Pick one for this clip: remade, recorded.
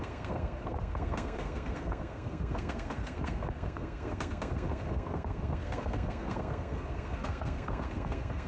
remade